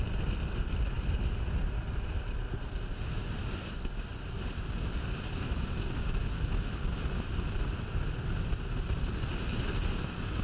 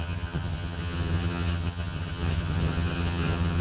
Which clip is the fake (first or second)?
second